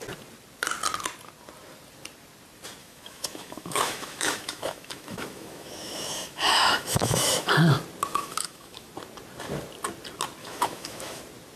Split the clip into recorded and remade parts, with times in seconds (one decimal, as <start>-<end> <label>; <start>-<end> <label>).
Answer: 0.0-2.8 recorded; 2.8-7.5 remade; 7.5-8.1 recorded; 8.1-8.9 remade; 8.9-10.4 recorded; 10.4-11.2 remade; 11.2-11.6 recorded